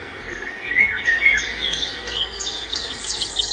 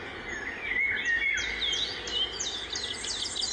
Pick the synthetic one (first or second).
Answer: first